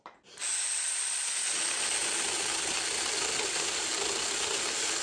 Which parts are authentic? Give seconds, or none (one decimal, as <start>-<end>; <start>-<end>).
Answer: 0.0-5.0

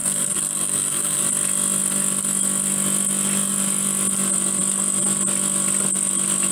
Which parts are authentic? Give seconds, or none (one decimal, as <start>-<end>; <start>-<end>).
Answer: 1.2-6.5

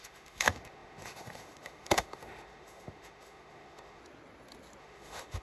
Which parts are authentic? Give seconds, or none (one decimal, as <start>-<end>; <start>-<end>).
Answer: 4.0-4.8

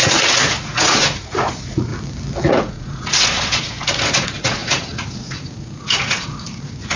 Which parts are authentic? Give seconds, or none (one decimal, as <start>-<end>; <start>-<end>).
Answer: 1.9-2.5

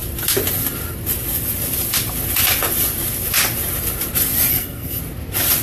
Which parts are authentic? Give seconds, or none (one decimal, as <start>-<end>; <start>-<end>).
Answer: 0.0-4.5; 5.0-5.6

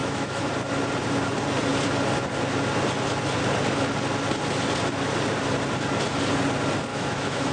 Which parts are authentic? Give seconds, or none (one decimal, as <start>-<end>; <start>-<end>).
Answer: 0.5-6.9

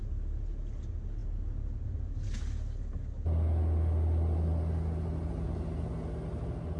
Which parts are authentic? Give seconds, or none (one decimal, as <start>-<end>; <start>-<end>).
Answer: 0.0-6.8

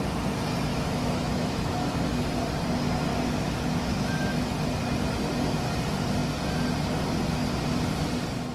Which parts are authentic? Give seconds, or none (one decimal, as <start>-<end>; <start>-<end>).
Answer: 0.0-0.7; 2.2-3.1; 4.7-8.5